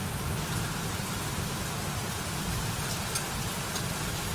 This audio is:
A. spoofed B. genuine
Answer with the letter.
B